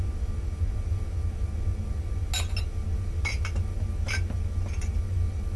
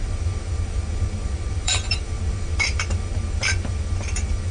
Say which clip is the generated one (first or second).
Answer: second